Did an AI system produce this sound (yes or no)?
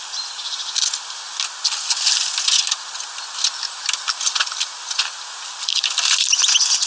no